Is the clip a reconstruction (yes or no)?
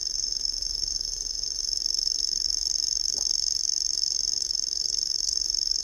yes